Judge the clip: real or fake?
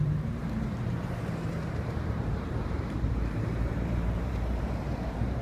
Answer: fake